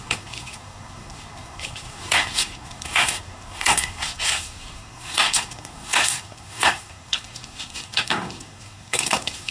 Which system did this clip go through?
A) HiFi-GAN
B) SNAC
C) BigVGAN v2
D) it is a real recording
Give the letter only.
B